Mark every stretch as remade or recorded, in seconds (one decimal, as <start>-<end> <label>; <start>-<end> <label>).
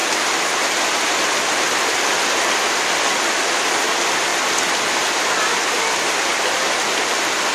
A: 0.0-3.5 remade; 3.5-4.3 recorded; 4.3-7.5 remade